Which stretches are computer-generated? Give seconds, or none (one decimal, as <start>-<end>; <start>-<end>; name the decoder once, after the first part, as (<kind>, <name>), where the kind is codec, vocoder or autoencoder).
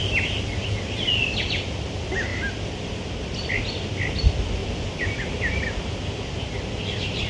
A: none